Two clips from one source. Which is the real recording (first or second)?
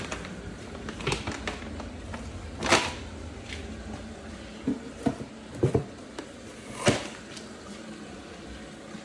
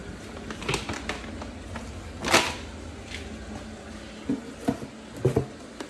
second